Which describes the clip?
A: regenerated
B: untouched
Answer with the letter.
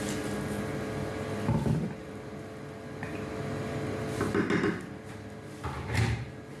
B